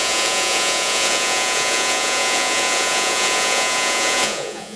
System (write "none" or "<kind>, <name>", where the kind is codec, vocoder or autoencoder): vocoder, Vocos